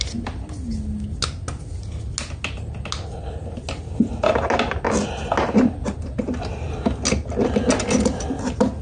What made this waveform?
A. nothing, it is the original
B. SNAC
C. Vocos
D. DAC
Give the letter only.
A